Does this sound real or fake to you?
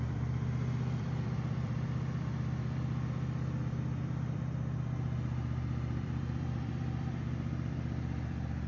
fake